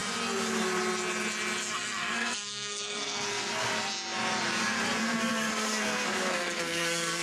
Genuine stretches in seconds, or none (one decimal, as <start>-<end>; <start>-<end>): 0.0-1.7; 3.7-5.0